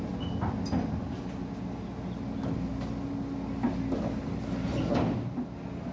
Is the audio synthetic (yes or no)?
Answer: no